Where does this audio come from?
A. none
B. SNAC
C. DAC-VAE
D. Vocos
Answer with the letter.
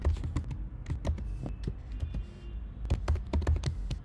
A